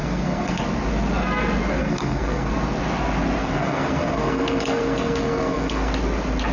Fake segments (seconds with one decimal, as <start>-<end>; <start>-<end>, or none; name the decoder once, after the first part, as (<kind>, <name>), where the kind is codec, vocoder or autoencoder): 0.0-0.6 (codec, SNAC); 1.8-2.5; 3.4-5.9